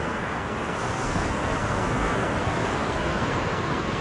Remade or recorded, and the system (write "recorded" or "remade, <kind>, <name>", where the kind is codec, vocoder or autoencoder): remade, codec, SNAC